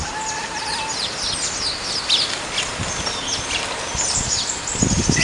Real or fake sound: real